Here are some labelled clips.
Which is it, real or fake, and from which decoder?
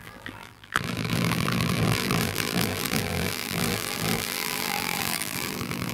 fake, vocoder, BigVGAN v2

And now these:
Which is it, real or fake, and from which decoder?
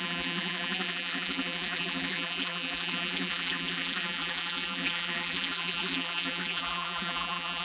fake, vocoder, BigVGAN v2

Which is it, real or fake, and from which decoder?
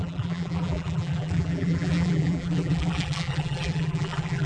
fake, vocoder, BigVGAN v2